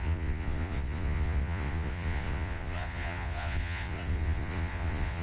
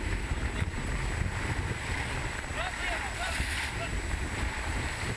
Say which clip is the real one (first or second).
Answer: second